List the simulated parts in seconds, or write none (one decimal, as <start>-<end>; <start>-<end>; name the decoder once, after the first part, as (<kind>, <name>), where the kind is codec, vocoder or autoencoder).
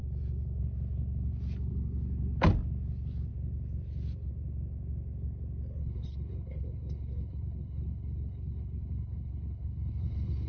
5.8-10.5 (codec, HILCodec)